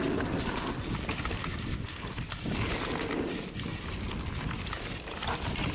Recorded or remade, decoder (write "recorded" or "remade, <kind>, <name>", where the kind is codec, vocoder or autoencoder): recorded